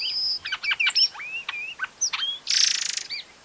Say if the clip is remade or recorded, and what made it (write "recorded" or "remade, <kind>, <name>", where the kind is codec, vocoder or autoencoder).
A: recorded